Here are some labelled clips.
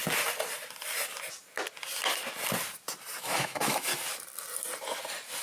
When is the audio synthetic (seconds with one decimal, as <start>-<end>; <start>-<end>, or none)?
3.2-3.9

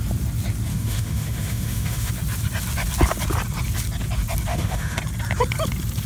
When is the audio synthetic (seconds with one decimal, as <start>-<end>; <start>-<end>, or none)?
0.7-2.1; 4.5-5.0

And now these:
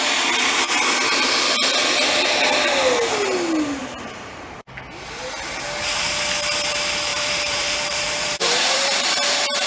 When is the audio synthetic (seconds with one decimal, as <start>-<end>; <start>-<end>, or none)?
3.8-4.4; 7.1-9.7

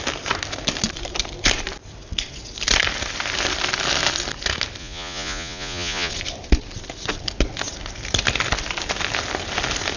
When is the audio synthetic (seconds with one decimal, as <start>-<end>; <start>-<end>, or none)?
4.8-6.1

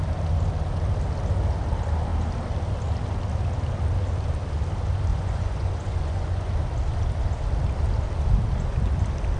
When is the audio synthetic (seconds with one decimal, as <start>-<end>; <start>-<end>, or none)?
5.1-6.5

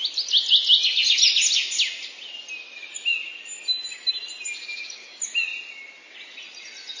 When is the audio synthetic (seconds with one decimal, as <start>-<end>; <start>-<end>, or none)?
none

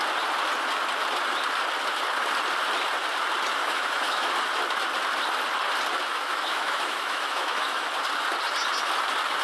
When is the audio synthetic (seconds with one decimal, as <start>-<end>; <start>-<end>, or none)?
3.6-4.3; 6.1-7.9